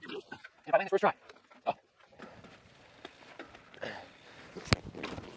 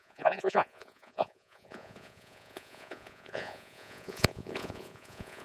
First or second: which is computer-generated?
second